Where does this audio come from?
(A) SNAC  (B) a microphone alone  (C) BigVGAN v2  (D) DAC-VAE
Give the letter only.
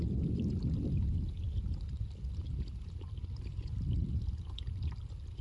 B